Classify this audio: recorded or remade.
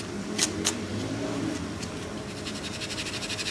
remade